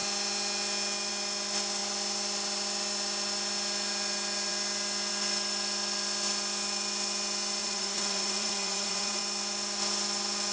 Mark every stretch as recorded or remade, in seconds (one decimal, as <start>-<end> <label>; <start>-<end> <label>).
0.0-7.6 recorded; 7.6-9.2 remade; 9.2-10.5 recorded